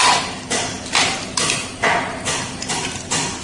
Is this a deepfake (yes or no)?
no